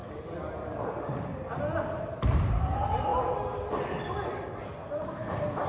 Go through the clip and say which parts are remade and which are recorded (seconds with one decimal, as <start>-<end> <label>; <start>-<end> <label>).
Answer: 0.0-5.7 recorded